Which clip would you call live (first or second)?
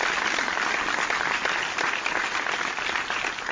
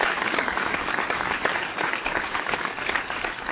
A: first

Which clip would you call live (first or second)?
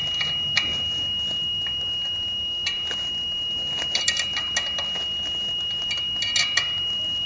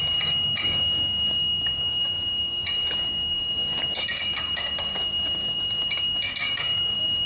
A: first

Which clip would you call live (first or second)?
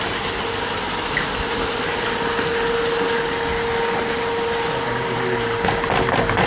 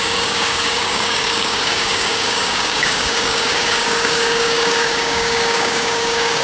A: first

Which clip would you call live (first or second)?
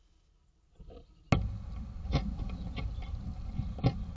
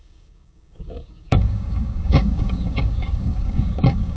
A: first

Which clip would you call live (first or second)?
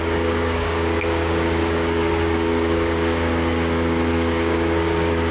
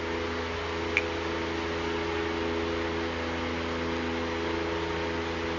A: second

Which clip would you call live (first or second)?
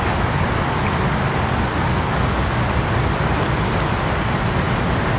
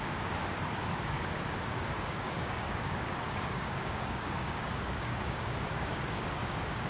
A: first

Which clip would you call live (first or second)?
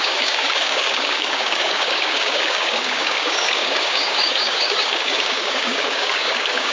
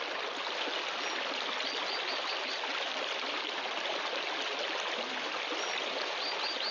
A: second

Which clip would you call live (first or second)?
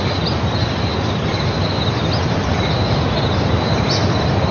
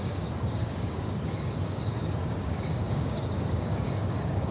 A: first